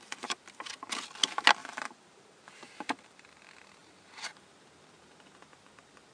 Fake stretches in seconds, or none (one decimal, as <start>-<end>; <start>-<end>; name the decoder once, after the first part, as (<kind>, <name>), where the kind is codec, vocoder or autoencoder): 1.6-3.4 (vocoder, BigVGAN v2); 3.8-4.4